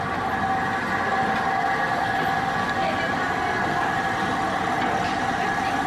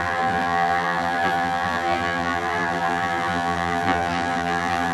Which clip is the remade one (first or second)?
second